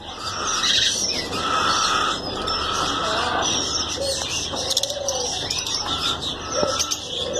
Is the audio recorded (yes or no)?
yes